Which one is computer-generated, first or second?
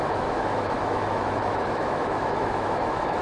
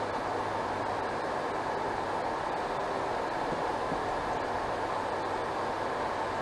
first